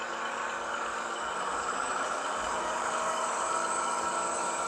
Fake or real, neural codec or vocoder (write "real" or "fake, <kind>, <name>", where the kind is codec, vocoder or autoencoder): fake, codec, DAC